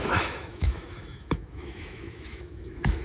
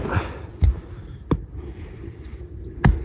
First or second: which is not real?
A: first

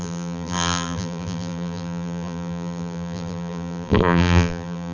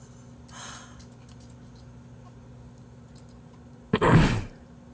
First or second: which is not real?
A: first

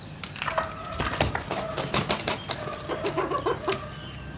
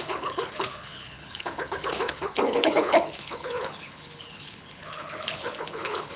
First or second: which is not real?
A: second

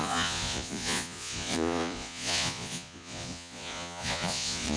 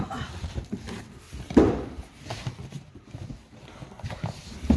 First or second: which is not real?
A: first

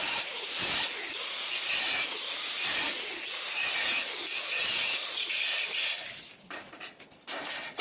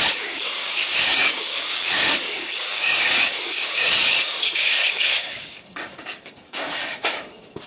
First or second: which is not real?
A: second